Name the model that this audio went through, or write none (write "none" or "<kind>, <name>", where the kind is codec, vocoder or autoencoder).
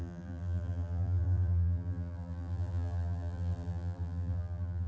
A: vocoder, BigVGAN v2